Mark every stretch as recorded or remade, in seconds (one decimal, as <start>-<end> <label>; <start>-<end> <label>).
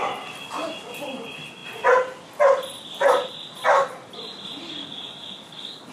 0.0-4.8 recorded; 4.8-5.9 remade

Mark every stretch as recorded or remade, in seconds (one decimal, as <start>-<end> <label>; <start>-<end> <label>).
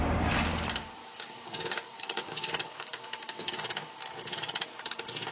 0.0-1.0 recorded; 1.0-4.0 remade; 4.0-5.3 recorded